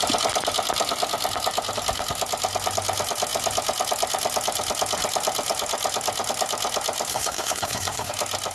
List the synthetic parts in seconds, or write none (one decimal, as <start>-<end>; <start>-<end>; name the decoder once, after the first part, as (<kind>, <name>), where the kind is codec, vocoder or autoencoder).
7.1-8.1 (codec, SNAC)